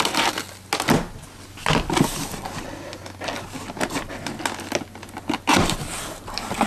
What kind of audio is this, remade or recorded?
recorded